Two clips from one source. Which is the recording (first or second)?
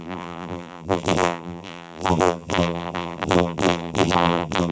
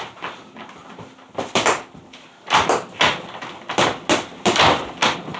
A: second